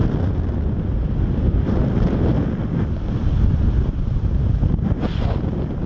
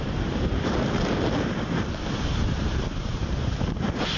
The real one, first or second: first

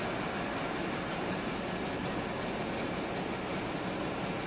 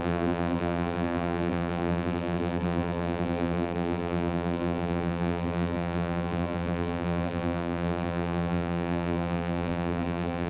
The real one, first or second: first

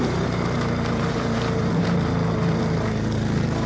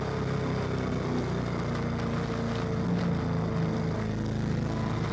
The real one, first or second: second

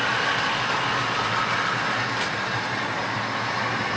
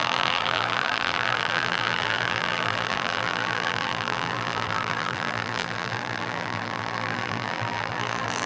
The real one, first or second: first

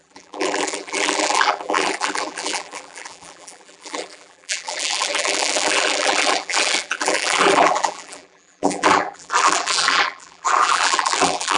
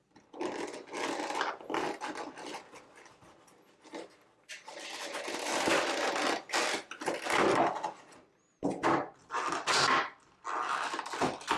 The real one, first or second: second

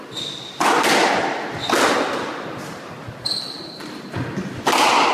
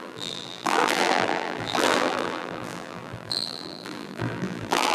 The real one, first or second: first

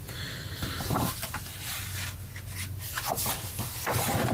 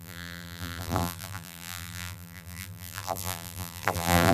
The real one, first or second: first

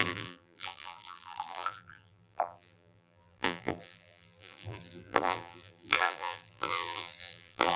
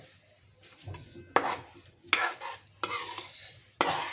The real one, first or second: second